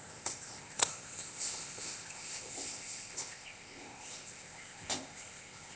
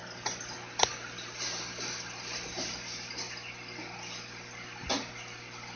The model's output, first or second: first